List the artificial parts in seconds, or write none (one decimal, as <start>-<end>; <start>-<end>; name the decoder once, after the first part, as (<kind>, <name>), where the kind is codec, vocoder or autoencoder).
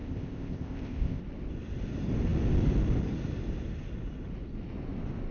0.0-1.2 (codec, ZipCodec)